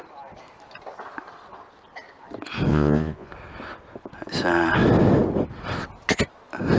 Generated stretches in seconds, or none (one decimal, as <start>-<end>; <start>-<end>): 2.7-3.3